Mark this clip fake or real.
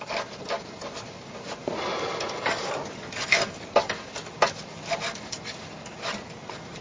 real